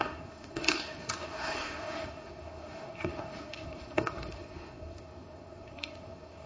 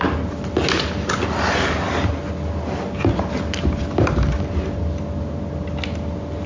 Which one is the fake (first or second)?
first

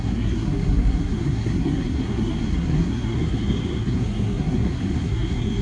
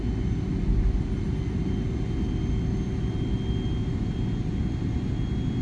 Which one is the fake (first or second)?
first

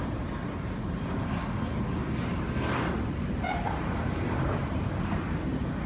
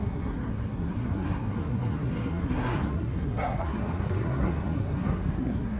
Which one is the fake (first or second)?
second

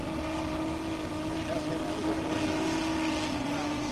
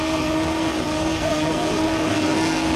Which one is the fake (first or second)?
second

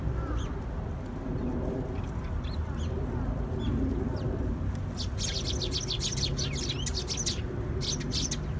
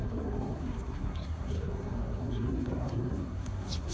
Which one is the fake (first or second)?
second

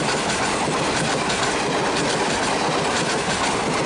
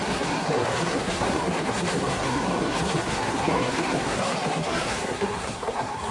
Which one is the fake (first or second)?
second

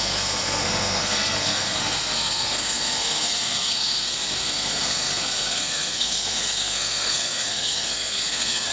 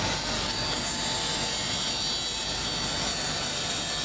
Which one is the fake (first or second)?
first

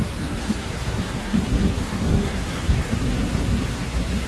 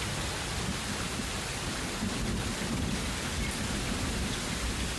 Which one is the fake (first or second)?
first